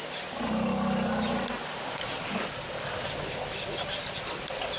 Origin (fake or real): real